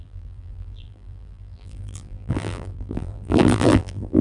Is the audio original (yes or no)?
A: no